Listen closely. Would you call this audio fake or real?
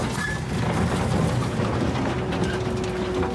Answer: real